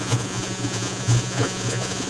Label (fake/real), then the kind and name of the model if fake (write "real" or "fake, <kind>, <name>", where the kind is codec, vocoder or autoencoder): fake, vocoder, Vocos